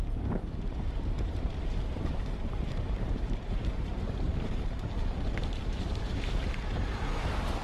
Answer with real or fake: fake